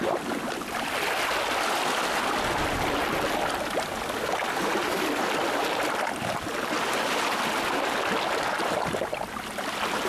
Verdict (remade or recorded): recorded